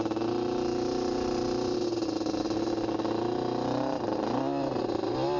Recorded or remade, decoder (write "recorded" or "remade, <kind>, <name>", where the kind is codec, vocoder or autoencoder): recorded